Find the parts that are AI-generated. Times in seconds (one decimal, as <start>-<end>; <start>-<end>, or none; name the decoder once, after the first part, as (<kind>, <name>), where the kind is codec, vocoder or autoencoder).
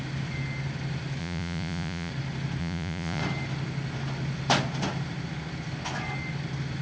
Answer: 1.2-2.1 (vocoder, Vocos); 2.6-3.2